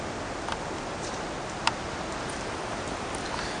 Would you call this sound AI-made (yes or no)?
no